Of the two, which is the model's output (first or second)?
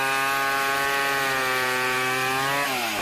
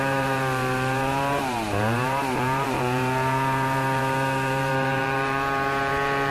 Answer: second